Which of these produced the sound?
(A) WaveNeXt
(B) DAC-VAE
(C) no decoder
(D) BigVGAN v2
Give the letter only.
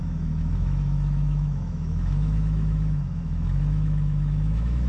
B